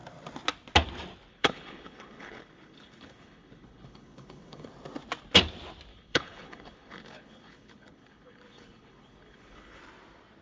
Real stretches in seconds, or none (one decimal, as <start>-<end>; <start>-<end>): 0.0-1.3; 4.7-5.9; 9.8-10.4